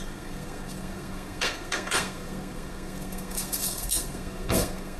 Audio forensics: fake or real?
fake